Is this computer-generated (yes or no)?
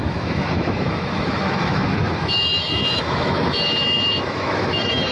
yes